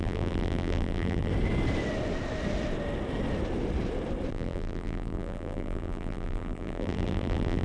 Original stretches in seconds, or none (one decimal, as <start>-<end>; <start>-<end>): 1.3-4.3